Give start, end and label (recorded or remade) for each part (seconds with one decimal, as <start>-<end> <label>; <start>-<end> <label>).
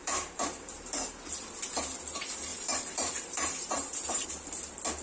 0.0-1.3 remade; 1.3-2.5 recorded; 2.5-4.3 remade; 4.3-5.0 recorded